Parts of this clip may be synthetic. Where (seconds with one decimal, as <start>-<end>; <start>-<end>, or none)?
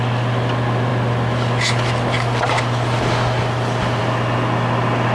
none